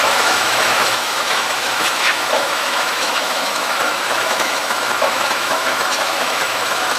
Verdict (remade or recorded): remade